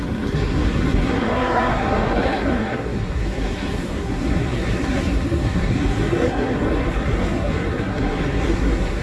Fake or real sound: fake